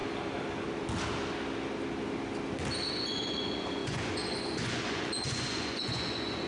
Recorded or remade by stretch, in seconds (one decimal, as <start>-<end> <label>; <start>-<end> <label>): 0.0-2.9 recorded; 2.9-6.5 remade